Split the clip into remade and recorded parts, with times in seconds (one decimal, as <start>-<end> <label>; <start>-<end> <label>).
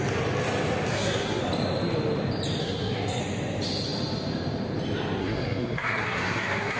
0.0-0.9 recorded; 0.9-1.4 remade; 1.4-2.6 recorded; 2.6-3.2 remade; 3.2-5.2 recorded; 5.2-6.8 remade